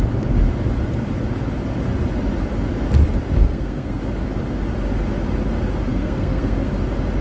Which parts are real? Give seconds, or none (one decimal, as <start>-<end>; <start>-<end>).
0.0-3.4; 4.0-5.9; 6.7-7.2